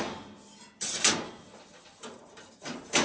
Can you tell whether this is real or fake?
real